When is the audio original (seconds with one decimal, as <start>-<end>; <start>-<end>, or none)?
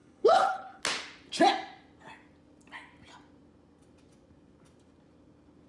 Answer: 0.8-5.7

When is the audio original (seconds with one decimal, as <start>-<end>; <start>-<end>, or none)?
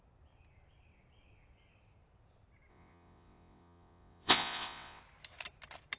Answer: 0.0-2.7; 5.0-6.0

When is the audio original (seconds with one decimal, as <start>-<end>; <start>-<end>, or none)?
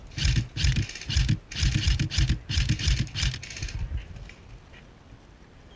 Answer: 0.0-5.8